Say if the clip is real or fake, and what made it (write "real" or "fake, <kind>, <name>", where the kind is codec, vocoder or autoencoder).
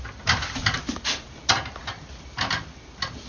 real